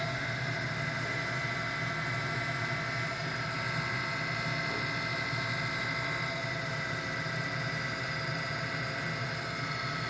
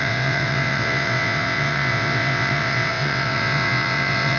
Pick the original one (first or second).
first